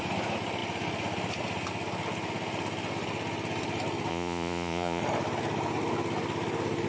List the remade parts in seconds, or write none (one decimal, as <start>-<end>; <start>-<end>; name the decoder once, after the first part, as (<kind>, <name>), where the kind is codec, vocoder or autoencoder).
4.1-5.0 (vocoder, Vocos)